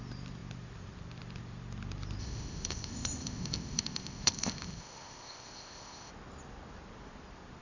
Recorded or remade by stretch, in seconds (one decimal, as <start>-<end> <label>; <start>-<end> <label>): 0.0-2.2 recorded; 2.2-6.1 remade; 6.1-7.6 recorded